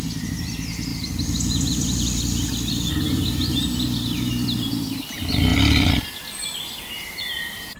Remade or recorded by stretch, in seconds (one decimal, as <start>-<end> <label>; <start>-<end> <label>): 0.0-0.9 recorded; 0.9-4.2 remade; 4.2-7.8 recorded